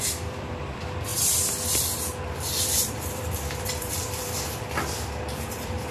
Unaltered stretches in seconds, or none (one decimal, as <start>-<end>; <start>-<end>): none